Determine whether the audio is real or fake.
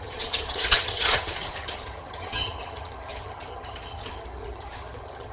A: fake